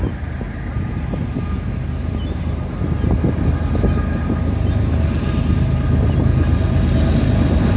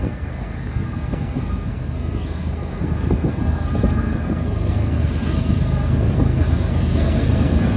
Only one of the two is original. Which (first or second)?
first